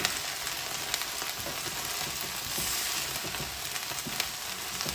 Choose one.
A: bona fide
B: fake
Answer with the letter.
A